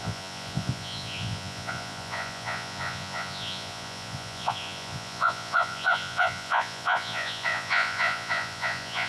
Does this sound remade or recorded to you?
remade